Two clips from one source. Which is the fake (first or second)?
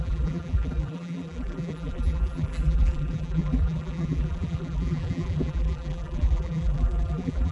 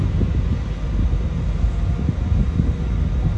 first